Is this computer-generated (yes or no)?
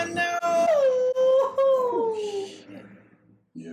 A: no